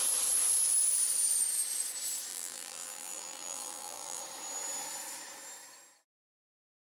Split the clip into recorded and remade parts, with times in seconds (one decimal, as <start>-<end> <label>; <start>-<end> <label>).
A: 0.0-2.3 recorded; 2.3-4.2 remade; 4.2-6.9 recorded